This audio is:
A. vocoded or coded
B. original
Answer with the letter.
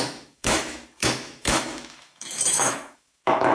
A